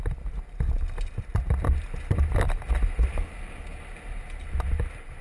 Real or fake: real